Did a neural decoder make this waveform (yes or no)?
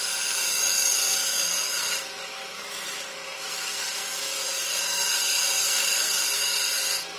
yes